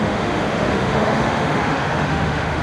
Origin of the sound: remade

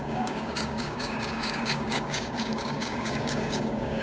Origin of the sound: remade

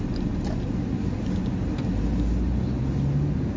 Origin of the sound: recorded